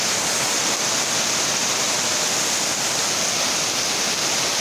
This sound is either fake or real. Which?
real